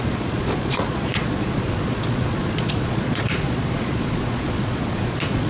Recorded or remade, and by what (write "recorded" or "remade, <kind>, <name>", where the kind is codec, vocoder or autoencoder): remade, vocoder, Vocos